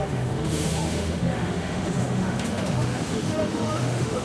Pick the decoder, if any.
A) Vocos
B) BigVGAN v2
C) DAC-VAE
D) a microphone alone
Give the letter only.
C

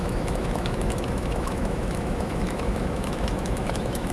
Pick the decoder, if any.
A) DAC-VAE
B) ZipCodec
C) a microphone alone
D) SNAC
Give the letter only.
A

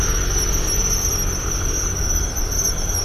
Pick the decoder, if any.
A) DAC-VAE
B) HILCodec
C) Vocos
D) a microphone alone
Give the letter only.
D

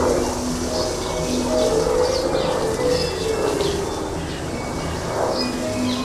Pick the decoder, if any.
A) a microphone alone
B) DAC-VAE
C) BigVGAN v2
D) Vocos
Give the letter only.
A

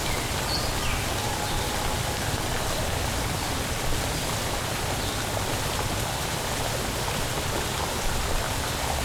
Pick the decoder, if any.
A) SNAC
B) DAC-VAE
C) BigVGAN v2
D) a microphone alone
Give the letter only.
D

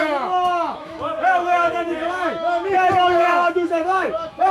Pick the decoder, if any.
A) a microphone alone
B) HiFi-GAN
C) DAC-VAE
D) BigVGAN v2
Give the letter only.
C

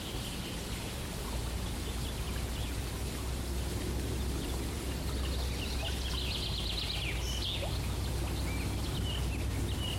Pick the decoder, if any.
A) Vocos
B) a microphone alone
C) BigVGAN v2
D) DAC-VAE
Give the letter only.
B